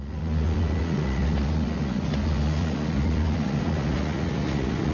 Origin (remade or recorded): remade